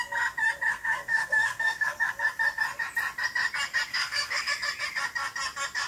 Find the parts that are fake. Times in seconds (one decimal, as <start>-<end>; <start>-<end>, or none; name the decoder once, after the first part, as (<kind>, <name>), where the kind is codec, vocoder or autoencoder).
0.7-2.1 (codec, SNAC); 3.9-4.5